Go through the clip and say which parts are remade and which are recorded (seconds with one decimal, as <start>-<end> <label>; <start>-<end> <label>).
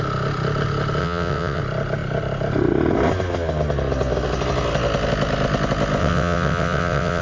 0.0-1.0 recorded; 1.0-1.6 remade; 1.6-6.0 recorded; 6.0-7.2 remade